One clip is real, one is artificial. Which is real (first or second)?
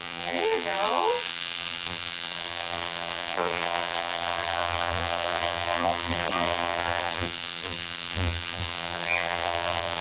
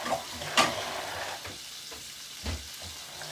second